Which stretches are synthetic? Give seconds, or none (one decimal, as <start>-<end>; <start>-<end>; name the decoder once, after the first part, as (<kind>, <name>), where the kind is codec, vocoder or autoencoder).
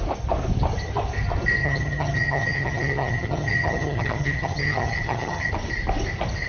1.6-5.5 (vocoder, HiFi-GAN)